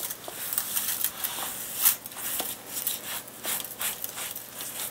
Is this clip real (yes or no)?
yes